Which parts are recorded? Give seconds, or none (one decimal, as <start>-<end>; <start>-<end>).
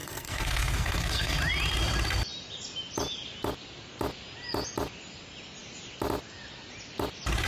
1.4-7.5